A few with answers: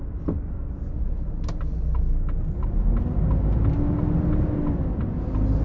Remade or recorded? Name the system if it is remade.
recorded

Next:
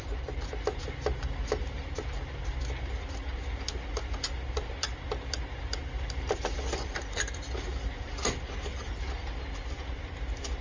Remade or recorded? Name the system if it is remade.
recorded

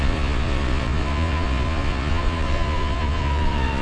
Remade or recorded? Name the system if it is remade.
remade, vocoder, Vocos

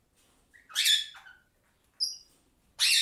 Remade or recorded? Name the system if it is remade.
recorded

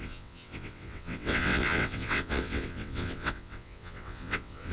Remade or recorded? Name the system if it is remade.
remade, vocoder, WaveNeXt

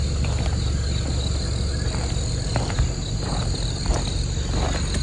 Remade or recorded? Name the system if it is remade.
recorded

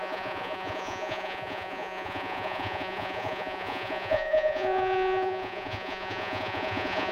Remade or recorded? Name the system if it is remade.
remade, vocoder, Vocos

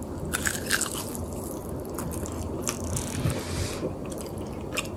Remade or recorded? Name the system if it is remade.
recorded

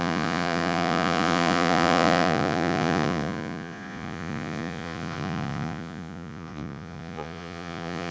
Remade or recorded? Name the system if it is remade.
remade, vocoder, Vocos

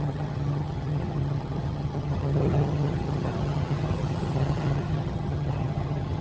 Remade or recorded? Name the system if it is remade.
remade, vocoder, HiFi-GAN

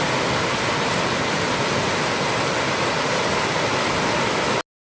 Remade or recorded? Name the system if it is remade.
recorded